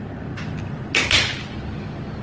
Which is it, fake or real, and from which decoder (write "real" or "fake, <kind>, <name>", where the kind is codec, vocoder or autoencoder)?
real